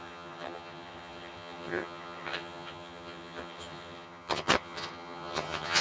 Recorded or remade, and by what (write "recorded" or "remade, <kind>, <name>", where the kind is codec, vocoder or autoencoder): remade, vocoder, HiFi-GAN